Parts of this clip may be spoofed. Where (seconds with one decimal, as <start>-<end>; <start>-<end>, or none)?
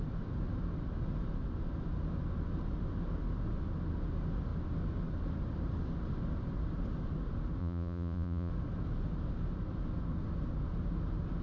7.6-8.5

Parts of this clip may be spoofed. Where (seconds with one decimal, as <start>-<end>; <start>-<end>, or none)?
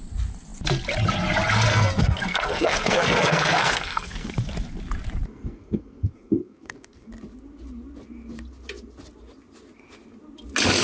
1.7-4.3; 5.3-7.1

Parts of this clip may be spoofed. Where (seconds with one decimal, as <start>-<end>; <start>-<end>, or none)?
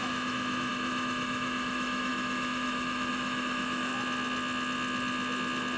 0.0-3.9